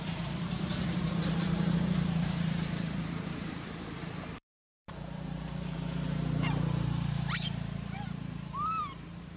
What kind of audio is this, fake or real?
fake